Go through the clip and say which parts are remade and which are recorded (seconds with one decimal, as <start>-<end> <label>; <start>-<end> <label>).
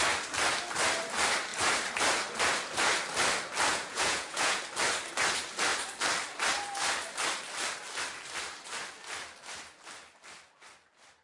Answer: 0.0-3.7 recorded; 3.7-4.6 remade; 4.6-11.2 recorded